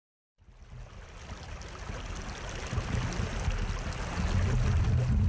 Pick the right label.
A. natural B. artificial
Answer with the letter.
A